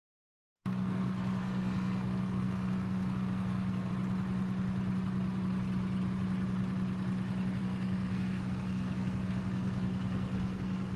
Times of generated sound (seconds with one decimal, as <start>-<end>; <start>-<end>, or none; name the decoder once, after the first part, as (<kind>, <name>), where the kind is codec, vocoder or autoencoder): 0.0-3.9 (codec, SNAC); 7.6-11.0